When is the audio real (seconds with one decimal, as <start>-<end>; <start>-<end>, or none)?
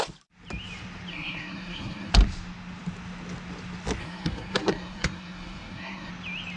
0.0-1.1; 2.1-4.0; 6.1-6.6